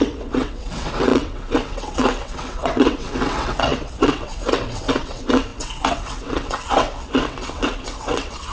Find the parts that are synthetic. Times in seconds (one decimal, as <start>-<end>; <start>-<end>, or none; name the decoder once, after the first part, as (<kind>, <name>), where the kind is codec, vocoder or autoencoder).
0.0-8.5 (vocoder, WaveNeXt)